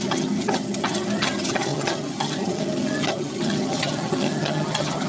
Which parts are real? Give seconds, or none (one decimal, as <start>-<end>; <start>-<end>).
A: none